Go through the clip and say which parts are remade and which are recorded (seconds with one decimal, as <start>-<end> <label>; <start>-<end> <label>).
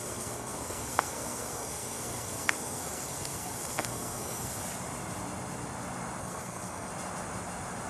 0.0-4.6 remade; 4.6-6.2 recorded; 6.2-6.9 remade; 6.9-7.9 recorded